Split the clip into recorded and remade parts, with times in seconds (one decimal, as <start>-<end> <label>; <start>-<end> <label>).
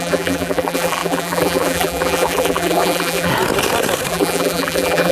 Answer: 0.0-3.3 remade; 3.3-4.1 recorded; 4.1-5.1 remade